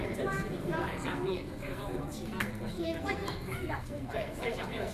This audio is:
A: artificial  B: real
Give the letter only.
A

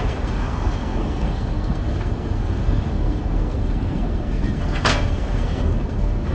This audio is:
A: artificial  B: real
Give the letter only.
A